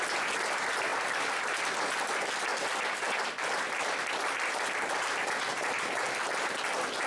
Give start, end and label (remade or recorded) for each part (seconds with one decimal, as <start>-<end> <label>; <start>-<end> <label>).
0.0-0.9 recorded; 0.9-1.6 remade; 1.6-2.5 recorded; 2.5-6.5 remade; 6.5-7.1 recorded